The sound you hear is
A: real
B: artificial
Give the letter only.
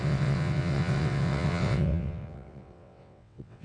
B